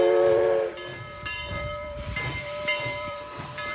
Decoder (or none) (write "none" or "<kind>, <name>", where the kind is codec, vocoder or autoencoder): vocoder, BigVGAN v2